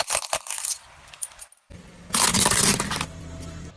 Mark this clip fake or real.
real